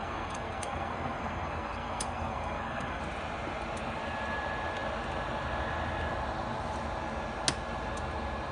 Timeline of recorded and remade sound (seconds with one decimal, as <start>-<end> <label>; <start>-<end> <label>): 0.0-3.0 remade; 3.0-8.5 recorded